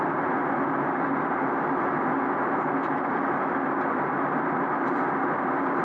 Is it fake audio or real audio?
real